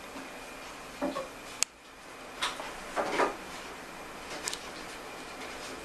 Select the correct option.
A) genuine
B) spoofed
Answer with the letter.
A